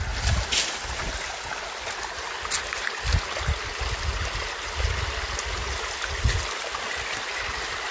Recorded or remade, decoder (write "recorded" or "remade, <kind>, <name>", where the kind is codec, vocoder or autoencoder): recorded